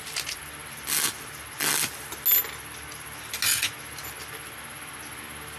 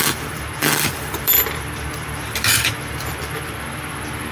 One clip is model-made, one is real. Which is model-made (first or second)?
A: second